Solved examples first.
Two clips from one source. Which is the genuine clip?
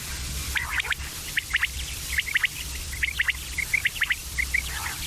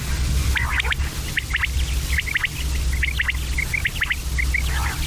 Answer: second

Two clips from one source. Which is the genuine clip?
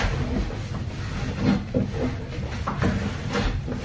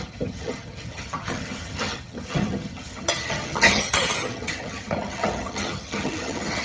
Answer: first